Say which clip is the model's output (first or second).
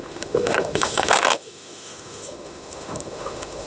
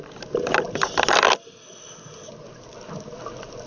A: first